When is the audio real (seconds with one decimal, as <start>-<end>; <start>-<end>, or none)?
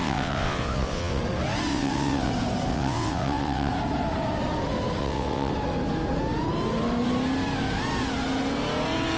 1.2-1.7; 2.3-2.7; 3.7-5.0; 5.5-9.2